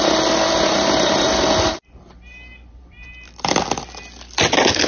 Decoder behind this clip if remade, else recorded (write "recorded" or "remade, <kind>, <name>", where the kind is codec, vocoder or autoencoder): recorded